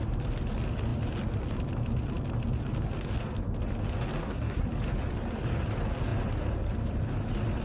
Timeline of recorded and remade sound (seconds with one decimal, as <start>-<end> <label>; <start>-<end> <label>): 0.0-4.2 recorded; 4.2-4.7 remade; 4.7-7.6 recorded